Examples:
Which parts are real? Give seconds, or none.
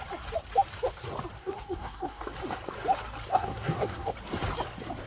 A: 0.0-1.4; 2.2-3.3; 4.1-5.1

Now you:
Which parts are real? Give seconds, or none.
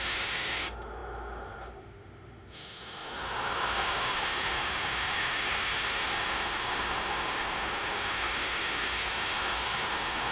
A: none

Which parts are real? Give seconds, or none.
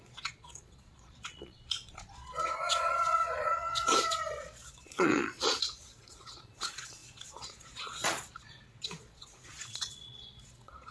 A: none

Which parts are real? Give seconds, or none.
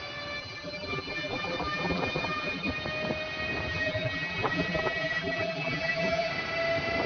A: 0.0-0.4; 2.7-3.7; 6.3-7.1